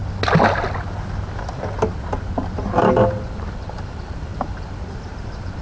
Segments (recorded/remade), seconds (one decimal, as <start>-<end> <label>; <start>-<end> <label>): 0.0-3.4 recorded; 3.4-4.3 remade; 4.3-5.0 recorded; 5.0-5.6 remade